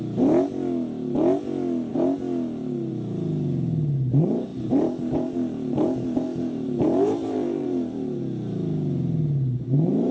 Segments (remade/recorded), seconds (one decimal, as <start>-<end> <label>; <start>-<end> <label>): 0.0-4.5 recorded; 4.5-8.2 remade; 8.2-10.1 recorded